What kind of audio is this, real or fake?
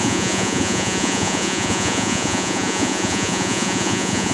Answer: fake